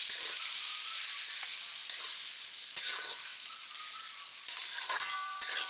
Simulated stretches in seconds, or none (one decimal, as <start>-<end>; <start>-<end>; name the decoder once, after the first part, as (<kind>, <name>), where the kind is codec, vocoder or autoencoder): 4.6-5.3 (vocoder, BigVGAN v2)